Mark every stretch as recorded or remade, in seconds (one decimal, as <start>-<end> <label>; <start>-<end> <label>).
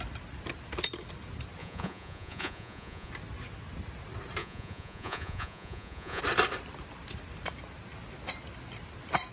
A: 0.0-1.6 recorded; 1.6-3.1 remade; 3.1-4.4 recorded; 4.4-6.2 remade; 6.2-9.3 recorded